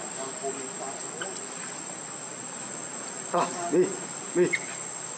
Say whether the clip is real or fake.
real